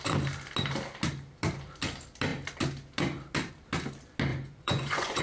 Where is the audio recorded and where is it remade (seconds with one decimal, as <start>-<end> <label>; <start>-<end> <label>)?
0.0-4.3 recorded; 4.3-5.2 remade

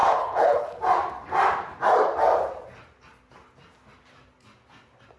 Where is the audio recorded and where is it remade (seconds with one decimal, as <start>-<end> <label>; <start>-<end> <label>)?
0.0-0.8 remade; 0.8-5.2 recorded

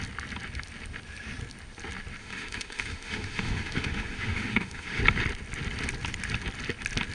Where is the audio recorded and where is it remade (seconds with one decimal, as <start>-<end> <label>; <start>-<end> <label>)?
0.0-2.2 recorded; 2.2-5.0 remade; 5.0-7.1 recorded

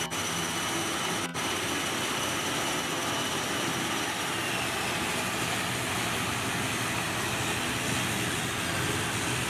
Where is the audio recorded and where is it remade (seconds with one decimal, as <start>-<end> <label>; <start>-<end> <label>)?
0.0-9.5 recorded